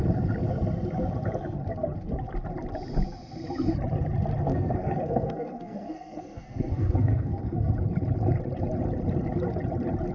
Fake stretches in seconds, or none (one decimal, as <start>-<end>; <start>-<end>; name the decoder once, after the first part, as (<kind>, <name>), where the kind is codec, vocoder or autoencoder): 4.5-7.7 (codec, SNAC)